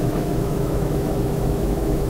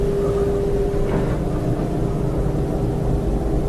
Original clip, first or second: second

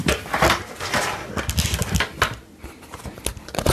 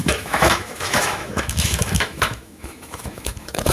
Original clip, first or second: first